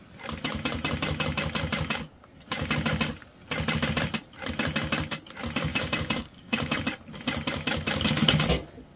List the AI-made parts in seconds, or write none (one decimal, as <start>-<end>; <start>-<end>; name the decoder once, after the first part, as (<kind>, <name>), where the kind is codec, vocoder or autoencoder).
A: 5.7-6.8 (codec, DAC)